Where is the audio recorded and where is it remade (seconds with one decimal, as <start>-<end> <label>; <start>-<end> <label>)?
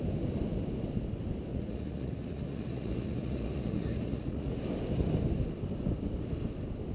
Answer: 0.0-1.5 recorded; 1.5-4.6 remade; 4.6-6.9 recorded